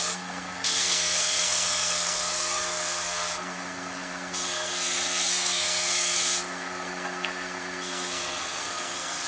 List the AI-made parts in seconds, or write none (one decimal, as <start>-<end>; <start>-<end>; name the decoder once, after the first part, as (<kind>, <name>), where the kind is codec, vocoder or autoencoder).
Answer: 0.0-9.3 (codec, SNAC)